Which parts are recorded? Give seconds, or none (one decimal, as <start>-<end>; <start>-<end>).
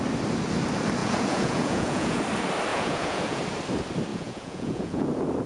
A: 0.0-1.0; 2.2-2.7; 3.4-4.1; 5.1-5.5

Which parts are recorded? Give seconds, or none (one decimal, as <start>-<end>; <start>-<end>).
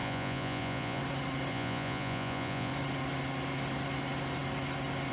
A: 1.0-1.5; 2.7-5.1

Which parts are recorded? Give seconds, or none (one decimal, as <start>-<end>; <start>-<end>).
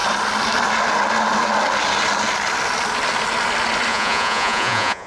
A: 0.0-3.9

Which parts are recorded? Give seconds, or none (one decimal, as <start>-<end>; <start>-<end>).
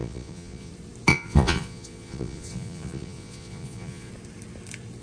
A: 0.7-1.1; 4.1-5.0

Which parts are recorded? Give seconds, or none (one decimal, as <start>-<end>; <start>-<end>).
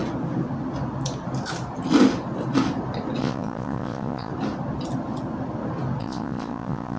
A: 0.0-3.2; 4.3-6.0